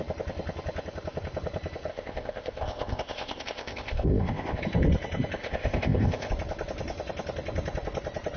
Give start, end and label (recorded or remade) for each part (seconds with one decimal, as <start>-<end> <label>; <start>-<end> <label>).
0.0-1.9 recorded; 1.9-4.6 remade; 4.6-5.4 recorded; 5.4-6.3 remade; 6.3-8.4 recorded